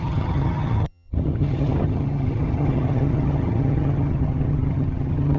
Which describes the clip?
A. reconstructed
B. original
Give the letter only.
A